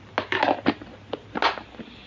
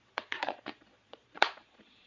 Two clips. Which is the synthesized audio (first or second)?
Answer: second